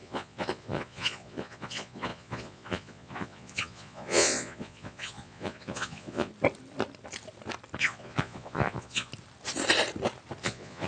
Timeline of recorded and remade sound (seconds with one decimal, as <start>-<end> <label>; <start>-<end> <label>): 0.0-6.3 remade; 6.3-7.8 recorded; 7.8-9.1 remade; 9.1-10.4 recorded; 10.4-10.9 remade